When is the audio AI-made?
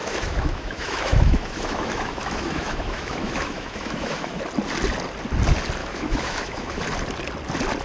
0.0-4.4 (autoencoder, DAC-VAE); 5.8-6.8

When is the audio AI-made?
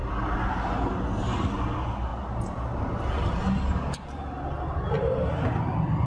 none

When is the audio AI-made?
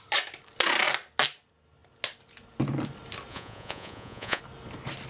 3.3-4.4 (vocoder, Vocos)